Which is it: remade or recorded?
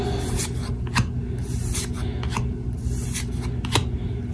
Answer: recorded